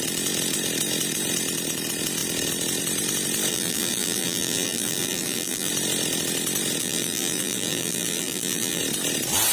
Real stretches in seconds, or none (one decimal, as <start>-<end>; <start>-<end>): 0.0-3.5; 5.7-6.8; 8.8-9.5